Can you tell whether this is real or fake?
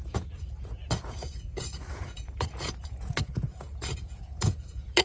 fake